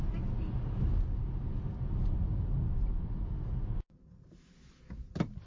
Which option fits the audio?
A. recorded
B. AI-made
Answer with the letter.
A